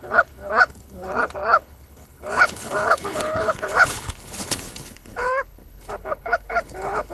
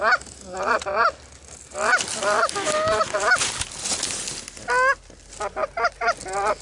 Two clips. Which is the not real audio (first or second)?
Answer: first